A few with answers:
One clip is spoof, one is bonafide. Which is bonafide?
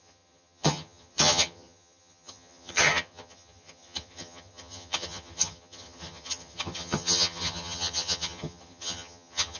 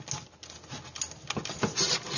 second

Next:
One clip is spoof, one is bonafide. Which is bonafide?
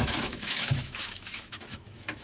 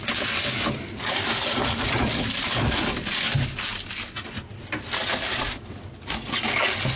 second